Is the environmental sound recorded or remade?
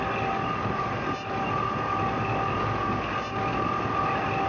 recorded